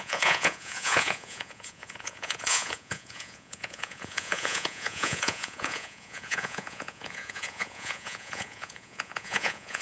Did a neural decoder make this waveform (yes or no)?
yes